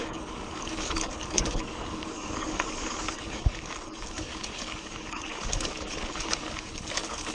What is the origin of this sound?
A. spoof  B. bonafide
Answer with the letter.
A